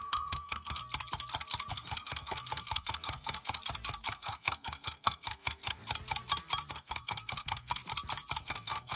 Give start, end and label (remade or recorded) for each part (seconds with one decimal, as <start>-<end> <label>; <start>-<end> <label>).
0.0-0.8 remade; 0.8-1.7 recorded; 1.7-3.6 remade; 3.6-4.1 recorded; 4.1-5.8 remade; 5.8-6.7 recorded; 6.7-7.8 remade; 7.8-8.4 recorded; 8.4-9.0 remade